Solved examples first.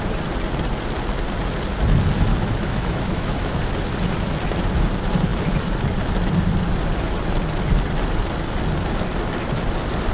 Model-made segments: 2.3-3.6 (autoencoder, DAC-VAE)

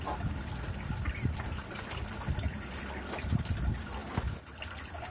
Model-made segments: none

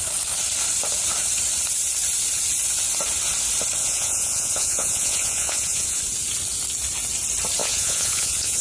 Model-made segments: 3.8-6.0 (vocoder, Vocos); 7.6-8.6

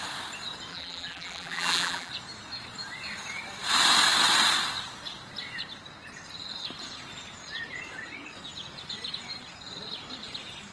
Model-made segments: 0.7-2.1 (vocoder, BigVGAN v2)

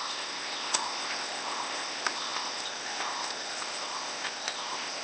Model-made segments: 0.0-5.0 (codec, ZipCodec)